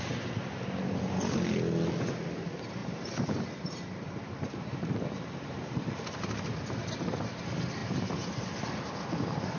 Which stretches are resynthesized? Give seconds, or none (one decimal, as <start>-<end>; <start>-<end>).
2.8-5.9